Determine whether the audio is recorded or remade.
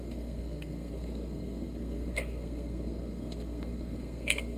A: remade